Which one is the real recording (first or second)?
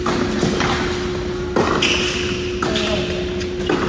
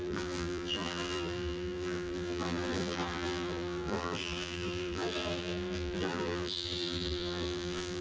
first